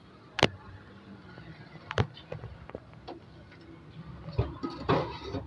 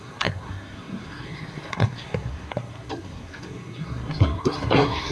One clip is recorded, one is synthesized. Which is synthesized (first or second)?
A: second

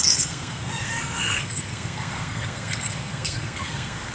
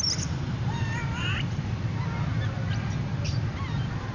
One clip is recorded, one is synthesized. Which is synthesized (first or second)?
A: first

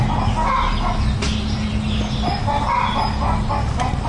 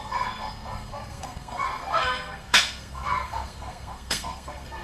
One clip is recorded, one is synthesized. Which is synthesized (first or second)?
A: second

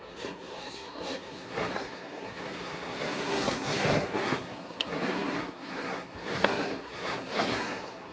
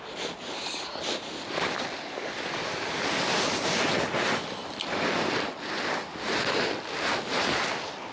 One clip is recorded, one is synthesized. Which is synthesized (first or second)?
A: first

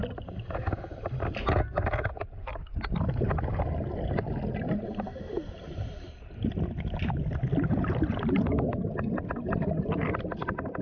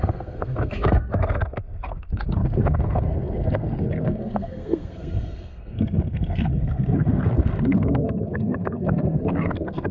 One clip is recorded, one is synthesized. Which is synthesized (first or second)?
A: second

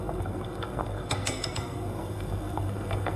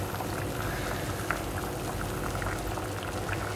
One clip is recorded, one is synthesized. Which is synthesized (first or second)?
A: first